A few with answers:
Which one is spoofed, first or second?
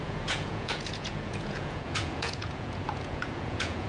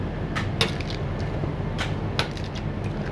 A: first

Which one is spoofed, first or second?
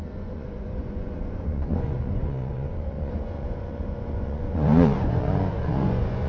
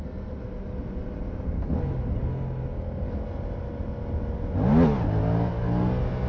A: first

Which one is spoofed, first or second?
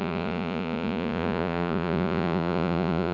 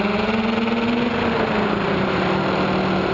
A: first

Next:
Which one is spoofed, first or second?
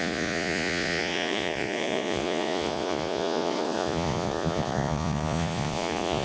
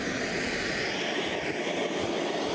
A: first